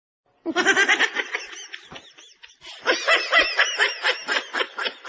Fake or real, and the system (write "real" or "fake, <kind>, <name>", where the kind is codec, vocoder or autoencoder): real